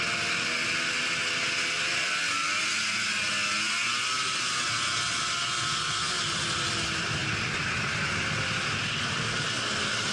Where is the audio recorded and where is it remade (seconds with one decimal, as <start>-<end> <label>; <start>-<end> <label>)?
0.0-10.1 recorded